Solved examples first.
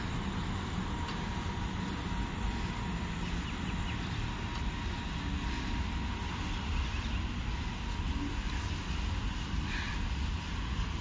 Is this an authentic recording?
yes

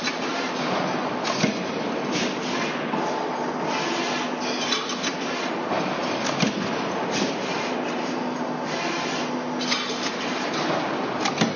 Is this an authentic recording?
yes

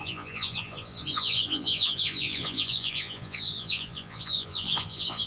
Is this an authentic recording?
no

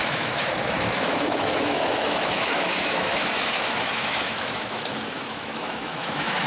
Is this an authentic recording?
no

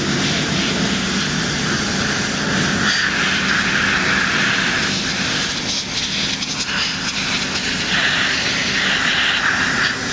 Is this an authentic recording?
yes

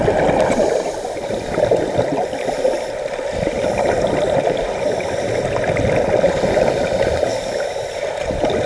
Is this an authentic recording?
yes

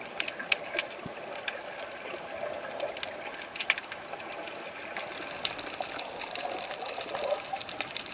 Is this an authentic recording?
yes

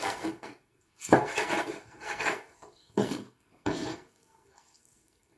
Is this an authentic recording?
no